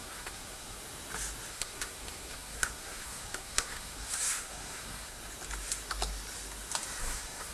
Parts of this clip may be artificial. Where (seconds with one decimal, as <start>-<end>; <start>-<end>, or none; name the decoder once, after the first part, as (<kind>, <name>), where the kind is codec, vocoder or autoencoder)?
0.0-0.8 (codec, SNAC); 1.5-5.2; 7.0-7.5